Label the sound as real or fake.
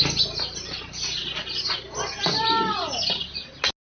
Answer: real